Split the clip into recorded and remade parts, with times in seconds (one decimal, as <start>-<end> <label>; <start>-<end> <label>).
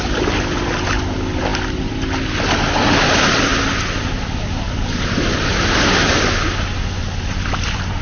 0.0-8.0 recorded